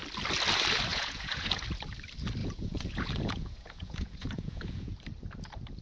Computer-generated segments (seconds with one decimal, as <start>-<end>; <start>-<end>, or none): 0.9-1.6; 2.4-4.9